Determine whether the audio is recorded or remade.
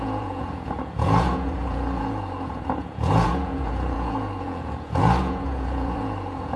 remade